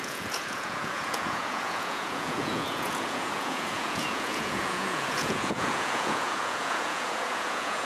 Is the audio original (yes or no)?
no